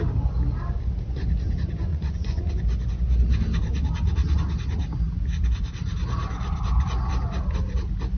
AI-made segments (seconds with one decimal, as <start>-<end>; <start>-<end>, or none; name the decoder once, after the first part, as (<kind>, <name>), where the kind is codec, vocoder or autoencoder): 1.9-2.5 (vocoder, Vocos)